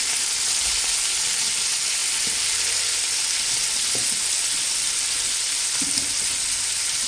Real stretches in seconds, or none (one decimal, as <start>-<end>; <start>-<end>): 0.0-7.1